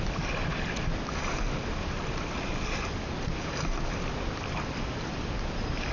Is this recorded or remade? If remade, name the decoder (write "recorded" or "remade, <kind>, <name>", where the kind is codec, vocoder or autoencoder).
recorded